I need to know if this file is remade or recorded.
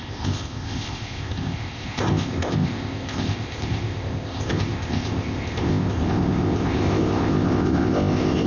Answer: remade